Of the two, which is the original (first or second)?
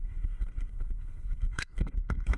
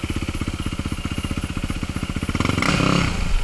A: second